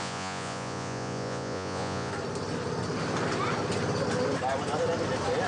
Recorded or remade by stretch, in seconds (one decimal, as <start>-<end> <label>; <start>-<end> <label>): 0.0-2.1 remade; 2.1-5.5 recorded